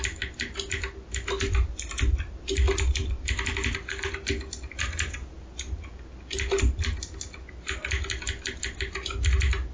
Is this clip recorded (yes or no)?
yes